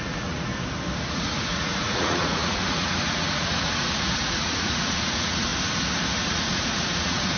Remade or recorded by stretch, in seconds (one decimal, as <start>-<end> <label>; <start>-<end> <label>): 0.0-0.5 remade; 0.5-1.0 recorded; 1.0-5.5 remade; 5.5-6.2 recorded; 6.2-7.4 remade